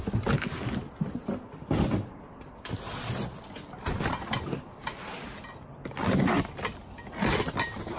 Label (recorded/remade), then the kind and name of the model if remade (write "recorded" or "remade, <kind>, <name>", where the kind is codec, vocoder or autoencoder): recorded